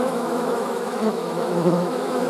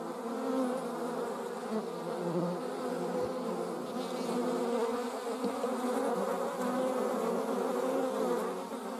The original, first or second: second